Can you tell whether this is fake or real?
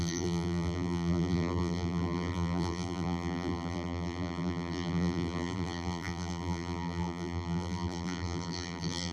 fake